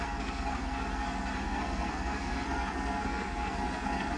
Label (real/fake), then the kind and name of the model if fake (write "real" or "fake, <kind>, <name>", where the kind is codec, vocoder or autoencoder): fake, codec, SNAC